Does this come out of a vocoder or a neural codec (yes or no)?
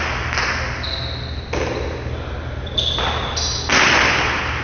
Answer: no